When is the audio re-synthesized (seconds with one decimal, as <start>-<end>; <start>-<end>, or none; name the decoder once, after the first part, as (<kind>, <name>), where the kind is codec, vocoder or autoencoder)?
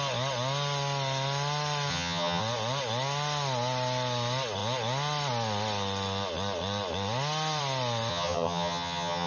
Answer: 1.9-2.4 (vocoder, HiFi-GAN); 8.1-9.3